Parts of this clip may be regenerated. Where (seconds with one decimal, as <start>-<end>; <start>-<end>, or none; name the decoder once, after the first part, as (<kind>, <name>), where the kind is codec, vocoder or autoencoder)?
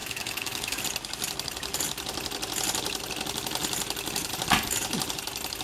0.0-0.8 (autoencoder, DAC-VAE)